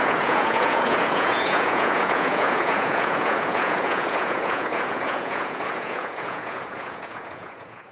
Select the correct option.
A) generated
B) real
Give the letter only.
A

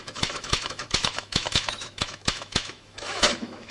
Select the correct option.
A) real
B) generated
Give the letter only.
B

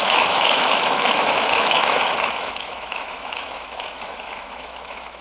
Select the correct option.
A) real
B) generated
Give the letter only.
B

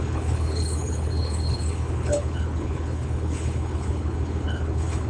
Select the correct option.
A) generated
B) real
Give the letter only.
A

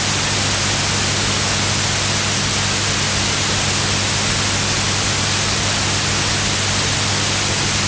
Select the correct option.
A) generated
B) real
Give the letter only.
B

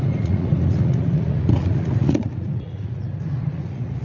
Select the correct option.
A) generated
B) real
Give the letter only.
A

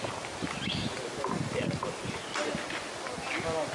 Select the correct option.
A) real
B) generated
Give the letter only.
A